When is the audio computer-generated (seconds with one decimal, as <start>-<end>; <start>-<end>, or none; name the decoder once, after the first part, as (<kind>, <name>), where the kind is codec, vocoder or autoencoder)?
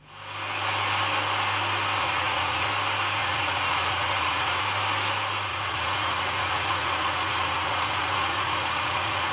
2.0-2.7 (vocoder, Vocos); 3.2-4.6; 5.5-9.3